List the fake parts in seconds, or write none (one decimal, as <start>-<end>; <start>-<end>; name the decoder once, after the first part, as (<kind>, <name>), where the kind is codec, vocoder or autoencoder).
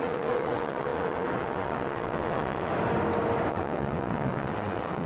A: 0.0-2.7 (vocoder, WaveNeXt); 3.5-5.1